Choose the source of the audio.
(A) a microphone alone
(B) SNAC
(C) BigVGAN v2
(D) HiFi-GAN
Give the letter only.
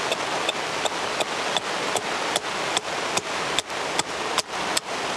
A